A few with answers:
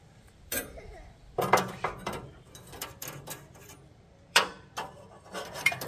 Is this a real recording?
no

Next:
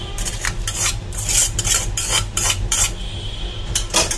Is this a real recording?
no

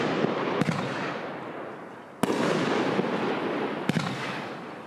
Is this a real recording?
yes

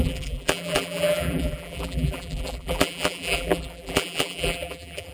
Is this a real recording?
no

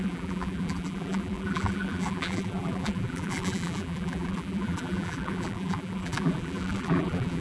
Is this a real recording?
no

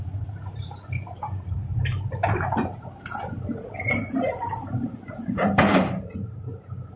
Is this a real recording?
no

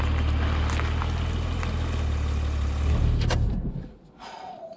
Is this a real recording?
yes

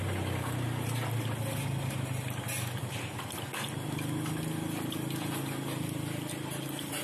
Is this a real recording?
yes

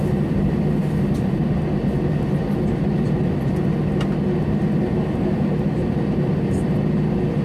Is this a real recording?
yes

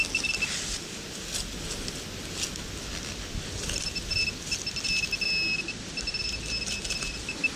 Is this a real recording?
yes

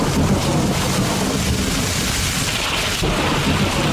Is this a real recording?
no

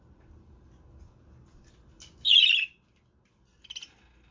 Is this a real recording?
yes